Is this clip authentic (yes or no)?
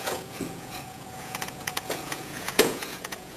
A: no